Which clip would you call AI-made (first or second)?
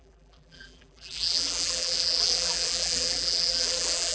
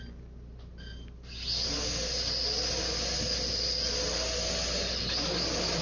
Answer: first